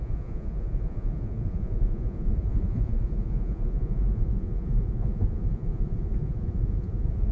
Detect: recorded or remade remade